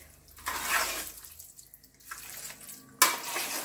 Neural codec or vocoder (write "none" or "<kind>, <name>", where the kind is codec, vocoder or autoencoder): none